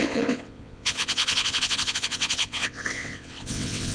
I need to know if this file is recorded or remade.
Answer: remade